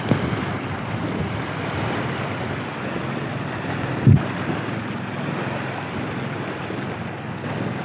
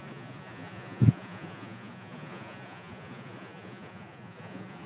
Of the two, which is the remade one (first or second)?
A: second